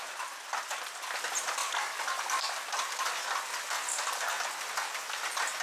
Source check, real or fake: real